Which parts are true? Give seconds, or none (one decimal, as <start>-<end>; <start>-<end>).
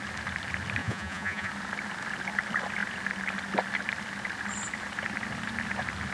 0.0-0.8; 1.5-6.1